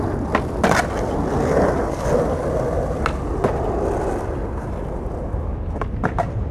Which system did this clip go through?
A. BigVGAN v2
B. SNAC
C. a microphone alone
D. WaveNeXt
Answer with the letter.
C